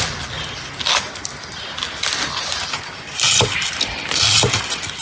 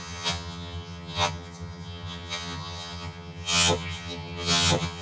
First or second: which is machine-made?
second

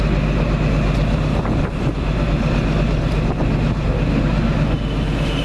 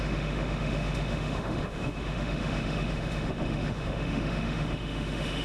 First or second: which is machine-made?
second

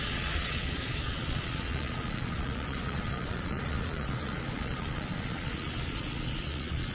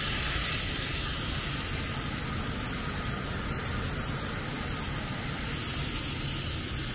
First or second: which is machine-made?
first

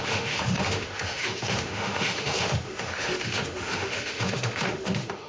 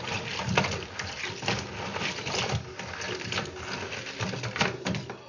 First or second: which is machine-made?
first